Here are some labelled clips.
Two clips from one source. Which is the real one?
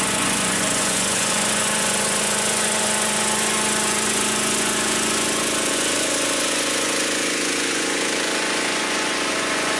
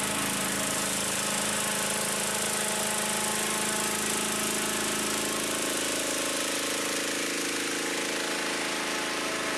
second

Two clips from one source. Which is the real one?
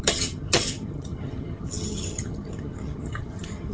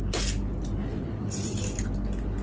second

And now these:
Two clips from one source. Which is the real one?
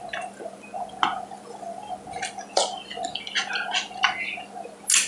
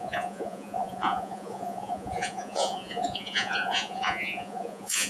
first